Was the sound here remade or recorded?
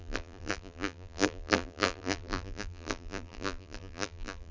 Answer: remade